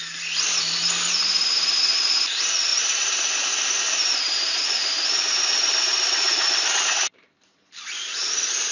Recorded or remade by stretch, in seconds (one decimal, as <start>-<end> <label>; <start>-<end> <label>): 0.0-8.7 recorded